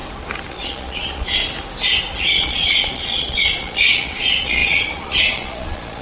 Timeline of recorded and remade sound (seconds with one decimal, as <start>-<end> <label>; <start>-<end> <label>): 0.0-0.5 recorded; 0.5-1.4 remade; 1.4-2.2 recorded; 2.2-6.0 remade